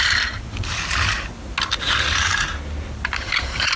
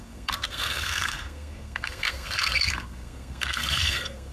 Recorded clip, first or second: first